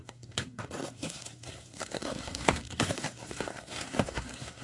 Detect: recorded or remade remade